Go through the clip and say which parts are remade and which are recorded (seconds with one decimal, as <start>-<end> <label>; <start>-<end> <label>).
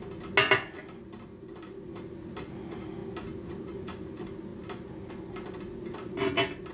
0.0-6.7 recorded